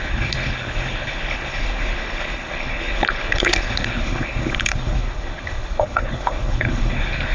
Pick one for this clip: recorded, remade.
remade